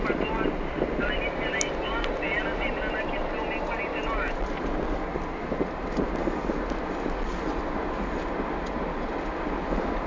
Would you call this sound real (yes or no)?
yes